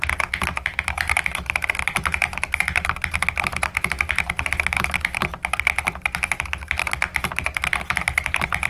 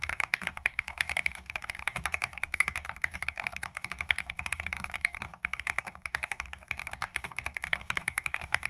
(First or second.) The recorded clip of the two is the first